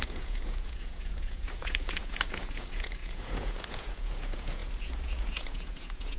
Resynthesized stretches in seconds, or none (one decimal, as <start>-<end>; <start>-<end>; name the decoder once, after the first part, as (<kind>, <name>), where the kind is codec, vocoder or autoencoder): 0.0-6.2 (vocoder, Vocos)